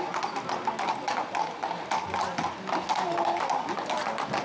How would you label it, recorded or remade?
recorded